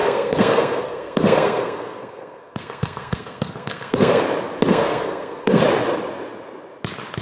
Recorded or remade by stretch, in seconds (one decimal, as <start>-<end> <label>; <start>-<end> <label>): 0.0-4.2 remade; 4.2-4.7 recorded; 4.7-5.6 remade; 5.6-7.2 recorded